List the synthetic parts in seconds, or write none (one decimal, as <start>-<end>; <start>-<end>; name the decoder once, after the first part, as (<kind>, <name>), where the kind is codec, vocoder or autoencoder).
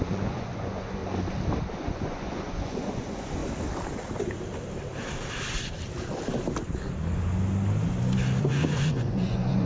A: 0.0-1.0 (vocoder, Vocos); 1.8-3.4; 8.4-9.7